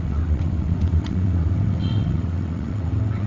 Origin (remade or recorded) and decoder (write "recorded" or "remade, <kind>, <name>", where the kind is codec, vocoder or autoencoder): remade, vocoder, WaveNeXt